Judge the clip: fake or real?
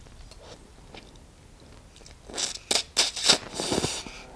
real